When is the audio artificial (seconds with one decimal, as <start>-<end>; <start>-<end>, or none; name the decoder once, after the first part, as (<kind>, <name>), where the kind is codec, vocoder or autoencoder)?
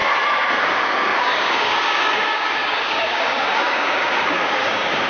0.6-5.1 (codec, DAC)